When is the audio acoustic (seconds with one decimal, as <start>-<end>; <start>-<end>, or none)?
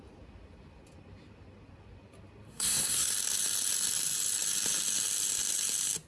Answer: 0.0-2.5; 3.1-6.1